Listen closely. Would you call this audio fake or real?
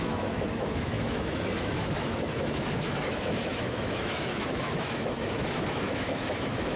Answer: fake